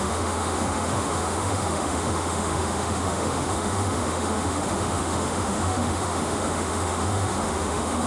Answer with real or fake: fake